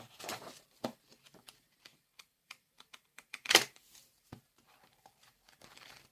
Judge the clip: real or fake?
fake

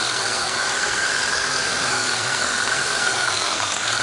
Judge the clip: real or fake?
fake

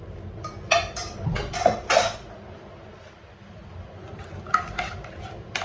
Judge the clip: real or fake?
real